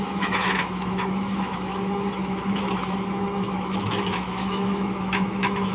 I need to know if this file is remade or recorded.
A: remade